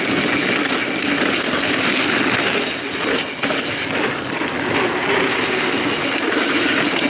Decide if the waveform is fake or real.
real